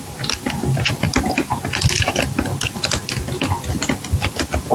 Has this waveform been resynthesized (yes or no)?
no